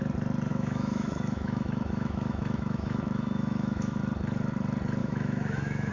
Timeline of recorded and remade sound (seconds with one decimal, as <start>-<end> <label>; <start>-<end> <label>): 0.0-0.5 recorded; 0.5-4.0 remade; 4.0-5.0 recorded; 5.0-5.9 remade

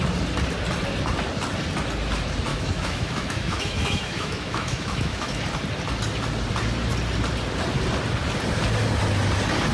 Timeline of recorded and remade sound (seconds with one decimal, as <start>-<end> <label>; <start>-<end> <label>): 0.0-2.5 recorded; 2.5-5.4 remade; 5.4-9.7 recorded